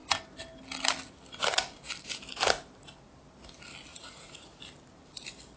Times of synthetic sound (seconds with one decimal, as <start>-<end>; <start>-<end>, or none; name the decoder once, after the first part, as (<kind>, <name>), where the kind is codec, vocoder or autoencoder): 3.9-4.6 (vocoder, Vocos)